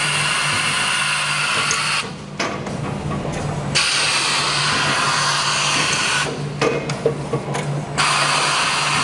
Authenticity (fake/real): real